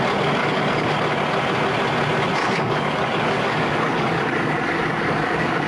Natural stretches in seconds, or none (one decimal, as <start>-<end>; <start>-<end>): 0.0-0.4; 0.9-2.4